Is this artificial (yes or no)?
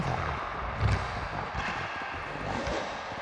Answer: no